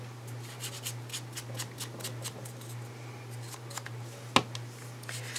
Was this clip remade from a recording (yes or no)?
no